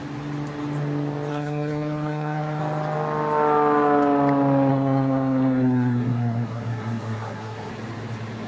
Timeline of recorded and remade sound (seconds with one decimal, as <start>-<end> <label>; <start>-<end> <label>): 0.0-1.3 recorded; 1.3-2.6 remade; 2.6-4.7 recorded; 4.7-7.7 remade; 7.7-8.5 recorded